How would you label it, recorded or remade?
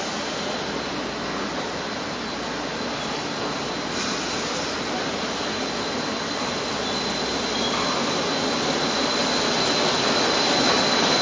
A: recorded